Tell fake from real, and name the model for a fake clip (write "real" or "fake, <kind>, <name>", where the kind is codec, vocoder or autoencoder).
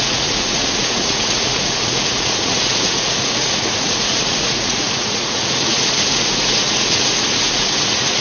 fake, vocoder, Vocos